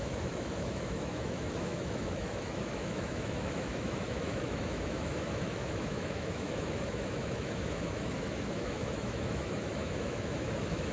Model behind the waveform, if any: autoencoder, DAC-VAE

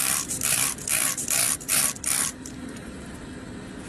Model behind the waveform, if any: vocoder, BigVGAN v2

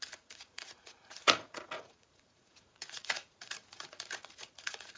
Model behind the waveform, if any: vocoder, Vocos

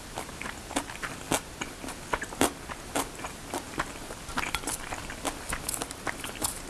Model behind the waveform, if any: none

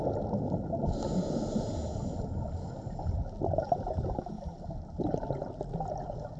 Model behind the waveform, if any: none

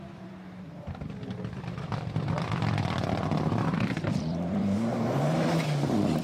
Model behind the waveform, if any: vocoder, BigVGAN v2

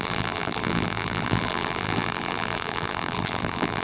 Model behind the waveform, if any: vocoder, BigVGAN v2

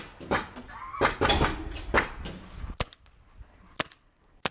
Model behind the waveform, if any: none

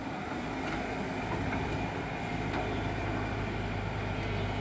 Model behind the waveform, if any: none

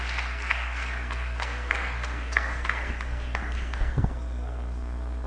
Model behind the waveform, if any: codec, SNAC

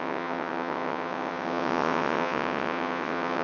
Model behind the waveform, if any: vocoder, WaveNeXt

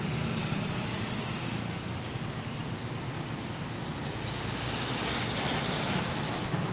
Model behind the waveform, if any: none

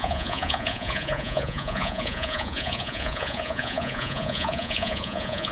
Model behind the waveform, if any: vocoder, Vocos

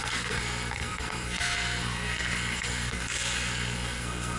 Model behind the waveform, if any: codec, SNAC